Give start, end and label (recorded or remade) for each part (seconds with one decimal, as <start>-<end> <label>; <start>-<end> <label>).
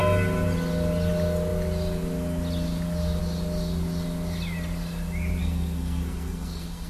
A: 0.0-5.4 recorded; 5.4-6.9 remade